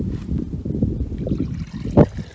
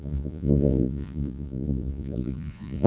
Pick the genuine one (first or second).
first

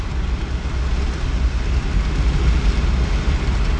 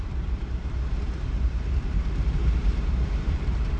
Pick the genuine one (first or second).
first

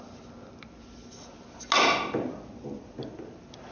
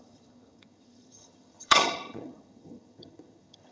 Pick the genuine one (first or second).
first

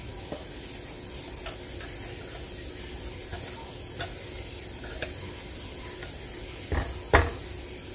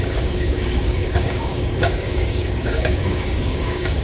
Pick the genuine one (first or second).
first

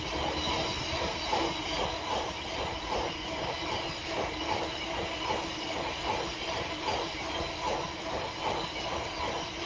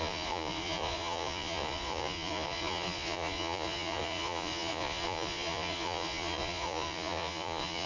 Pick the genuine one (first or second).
first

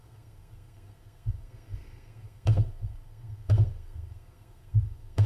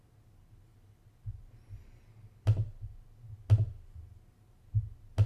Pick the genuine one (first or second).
second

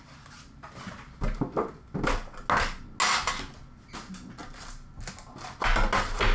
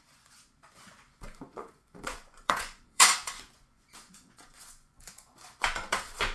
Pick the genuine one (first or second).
first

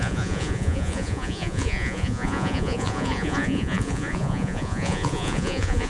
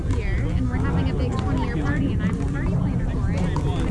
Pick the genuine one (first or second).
second